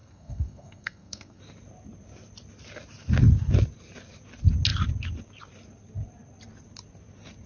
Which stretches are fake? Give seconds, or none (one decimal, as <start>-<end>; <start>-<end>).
0.0-1.4